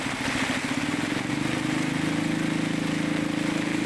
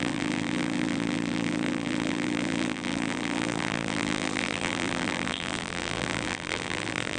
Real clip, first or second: first